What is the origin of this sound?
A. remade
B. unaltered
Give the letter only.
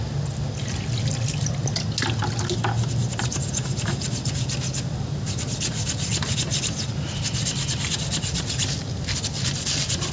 B